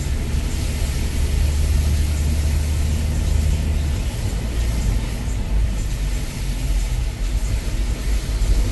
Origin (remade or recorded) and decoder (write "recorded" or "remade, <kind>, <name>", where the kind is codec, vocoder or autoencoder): recorded